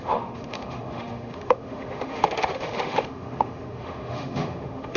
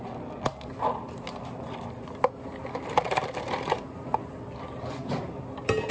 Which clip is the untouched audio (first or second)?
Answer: second